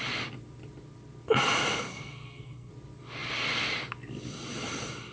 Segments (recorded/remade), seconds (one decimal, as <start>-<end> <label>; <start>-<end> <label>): 0.0-1.9 recorded; 1.9-2.7 remade; 2.7-5.1 recorded